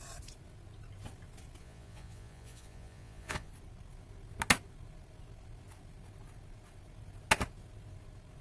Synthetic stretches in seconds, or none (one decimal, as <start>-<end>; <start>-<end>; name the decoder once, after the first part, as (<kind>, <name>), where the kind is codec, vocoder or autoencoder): 1.6-3.5 (vocoder, Vocos)